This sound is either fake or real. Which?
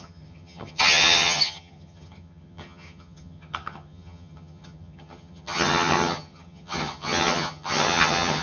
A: fake